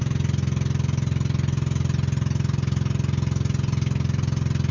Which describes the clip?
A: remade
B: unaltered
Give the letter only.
B